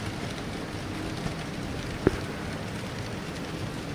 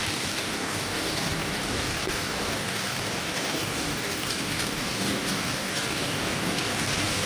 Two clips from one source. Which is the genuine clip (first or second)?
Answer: first